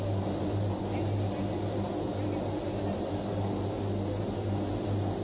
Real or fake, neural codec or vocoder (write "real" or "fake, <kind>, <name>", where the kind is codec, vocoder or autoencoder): real